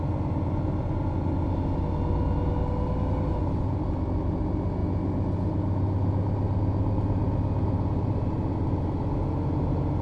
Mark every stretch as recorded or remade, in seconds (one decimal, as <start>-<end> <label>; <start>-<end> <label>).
0.0-10.0 recorded